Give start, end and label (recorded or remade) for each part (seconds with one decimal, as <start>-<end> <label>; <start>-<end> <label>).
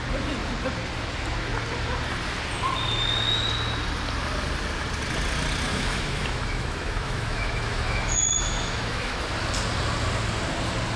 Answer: 0.0-5.7 recorded; 5.7-9.2 remade; 9.2-11.0 recorded